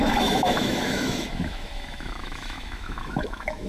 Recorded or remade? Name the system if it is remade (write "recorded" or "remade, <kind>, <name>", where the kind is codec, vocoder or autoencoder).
remade, autoencoder, DAC-VAE